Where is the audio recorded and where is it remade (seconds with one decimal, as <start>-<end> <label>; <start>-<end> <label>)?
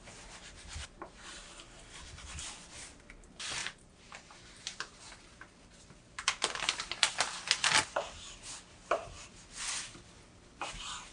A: 0.0-3.6 recorded; 3.6-7.1 remade; 7.1-9.0 recorded; 9.0-9.7 remade; 9.7-11.1 recorded